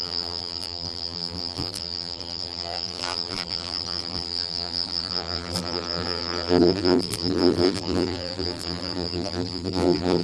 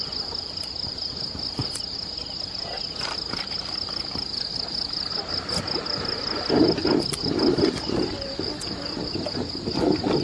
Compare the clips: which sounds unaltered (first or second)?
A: second